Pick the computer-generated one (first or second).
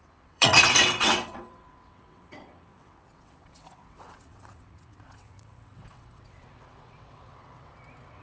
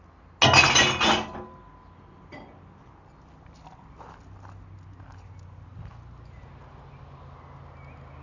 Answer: first